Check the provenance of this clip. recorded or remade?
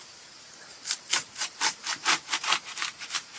remade